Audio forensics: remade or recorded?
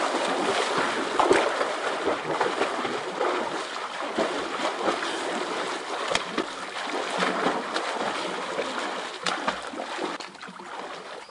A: recorded